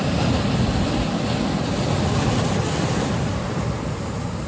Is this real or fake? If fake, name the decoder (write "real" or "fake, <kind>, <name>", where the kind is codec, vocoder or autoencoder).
real